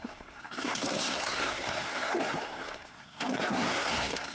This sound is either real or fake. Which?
fake